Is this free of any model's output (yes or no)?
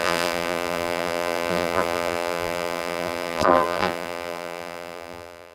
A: no